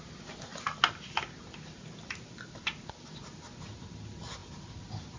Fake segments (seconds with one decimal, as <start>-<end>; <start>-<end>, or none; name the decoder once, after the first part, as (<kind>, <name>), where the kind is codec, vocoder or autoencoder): none